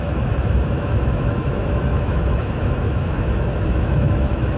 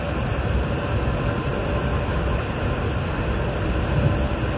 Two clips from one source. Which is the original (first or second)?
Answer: second